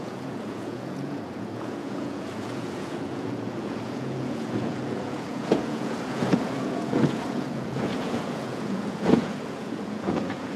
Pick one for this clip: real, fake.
fake